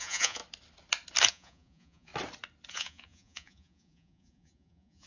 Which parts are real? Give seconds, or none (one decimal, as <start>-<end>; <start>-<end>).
0.4-1.3; 2.1-2.7